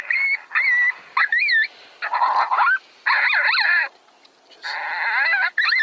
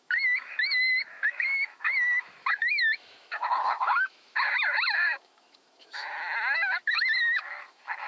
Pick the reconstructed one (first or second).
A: second